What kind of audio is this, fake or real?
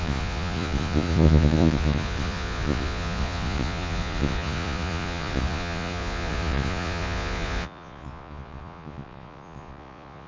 fake